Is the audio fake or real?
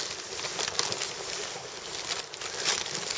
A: real